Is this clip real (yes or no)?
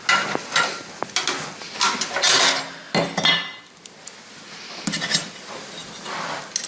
yes